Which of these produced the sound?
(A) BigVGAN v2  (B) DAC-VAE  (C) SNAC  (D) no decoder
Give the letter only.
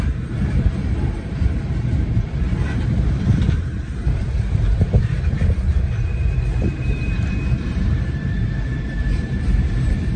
A